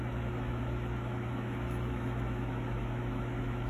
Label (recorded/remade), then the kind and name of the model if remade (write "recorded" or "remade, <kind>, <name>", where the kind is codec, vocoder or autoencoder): remade, autoencoder, DAC-VAE